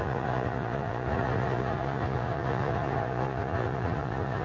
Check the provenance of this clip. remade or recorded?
remade